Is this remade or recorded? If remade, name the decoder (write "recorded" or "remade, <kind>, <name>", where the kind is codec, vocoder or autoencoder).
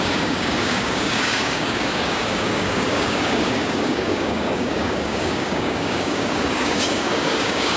remade, codec, DAC